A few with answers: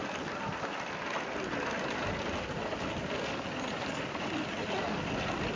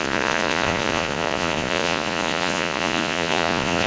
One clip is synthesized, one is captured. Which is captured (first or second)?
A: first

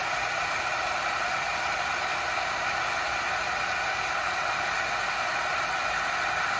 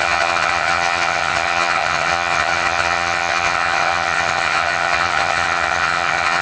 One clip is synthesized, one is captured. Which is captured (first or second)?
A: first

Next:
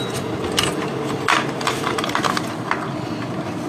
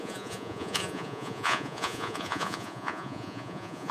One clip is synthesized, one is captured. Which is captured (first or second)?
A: first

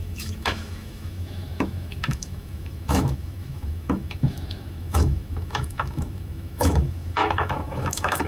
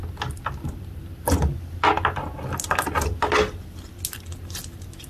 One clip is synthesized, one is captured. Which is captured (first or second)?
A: second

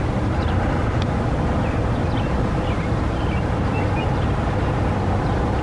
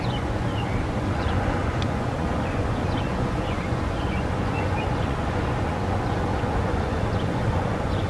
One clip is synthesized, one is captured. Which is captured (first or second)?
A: first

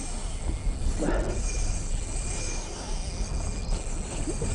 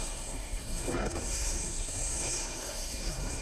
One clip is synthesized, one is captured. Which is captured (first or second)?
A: first